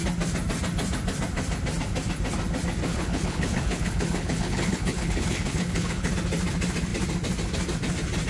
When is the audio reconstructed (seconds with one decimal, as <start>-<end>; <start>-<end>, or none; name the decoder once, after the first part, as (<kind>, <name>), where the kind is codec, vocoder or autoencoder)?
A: 2.9-6.1 (codec, HILCodec)